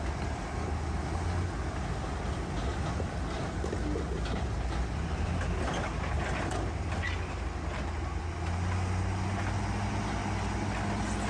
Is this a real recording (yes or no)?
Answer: yes